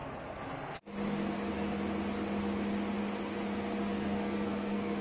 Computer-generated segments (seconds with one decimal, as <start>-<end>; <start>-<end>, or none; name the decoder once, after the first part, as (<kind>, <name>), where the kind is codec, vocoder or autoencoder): 3.9-5.0 (codec, SNAC)